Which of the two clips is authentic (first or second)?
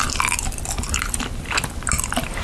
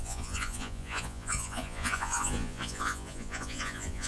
first